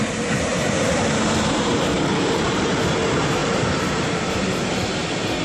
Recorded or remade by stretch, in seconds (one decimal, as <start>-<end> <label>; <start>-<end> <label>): 0.0-0.5 recorded; 0.5-2.7 remade; 2.7-3.4 recorded; 3.4-4.6 remade; 4.6-5.4 recorded